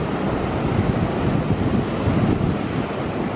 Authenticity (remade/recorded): recorded